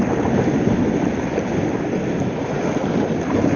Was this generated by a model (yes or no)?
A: no